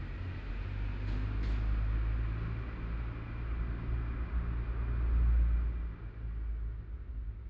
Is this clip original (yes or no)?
yes